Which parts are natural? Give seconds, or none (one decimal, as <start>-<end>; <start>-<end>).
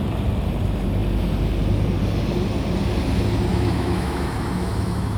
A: 0.0-3.5